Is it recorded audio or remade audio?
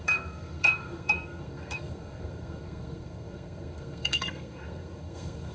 remade